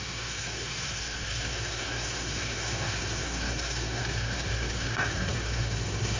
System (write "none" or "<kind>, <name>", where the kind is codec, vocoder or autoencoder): codec, SNAC